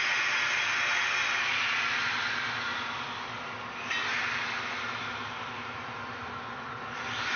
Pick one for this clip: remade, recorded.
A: recorded